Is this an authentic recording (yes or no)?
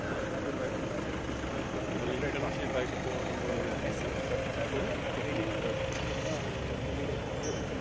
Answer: yes